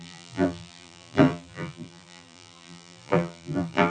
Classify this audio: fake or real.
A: fake